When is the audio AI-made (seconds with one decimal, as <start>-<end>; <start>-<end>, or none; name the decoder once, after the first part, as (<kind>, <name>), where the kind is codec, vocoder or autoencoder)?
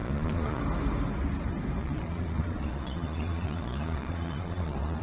0.0-0.6 (vocoder, Vocos); 1.8-5.0